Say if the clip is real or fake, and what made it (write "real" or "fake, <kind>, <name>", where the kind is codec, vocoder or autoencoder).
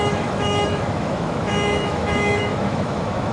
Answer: fake, autoencoder, DAC-VAE